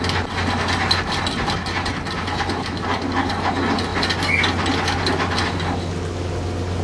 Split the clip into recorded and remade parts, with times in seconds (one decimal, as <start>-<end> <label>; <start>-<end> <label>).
0.0-6.8 recorded